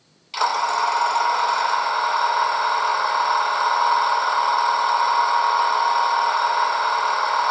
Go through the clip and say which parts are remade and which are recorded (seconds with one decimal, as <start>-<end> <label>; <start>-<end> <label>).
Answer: 0.0-7.5 recorded